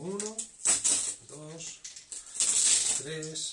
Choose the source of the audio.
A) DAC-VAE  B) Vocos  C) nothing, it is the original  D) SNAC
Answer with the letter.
C